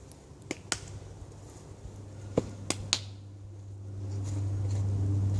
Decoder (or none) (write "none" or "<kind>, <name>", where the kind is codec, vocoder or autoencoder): none